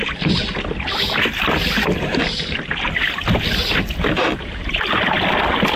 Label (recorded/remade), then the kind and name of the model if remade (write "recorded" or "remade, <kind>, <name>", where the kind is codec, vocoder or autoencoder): recorded